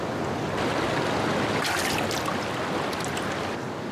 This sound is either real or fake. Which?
real